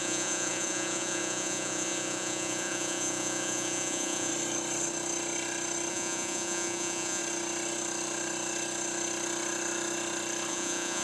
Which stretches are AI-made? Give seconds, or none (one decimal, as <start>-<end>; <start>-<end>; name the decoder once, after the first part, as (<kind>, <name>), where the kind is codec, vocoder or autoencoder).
0.0-4.3 (vocoder, Vocos); 5.9-7.2; 10.5-11.0